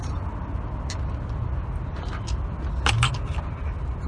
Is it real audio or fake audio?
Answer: real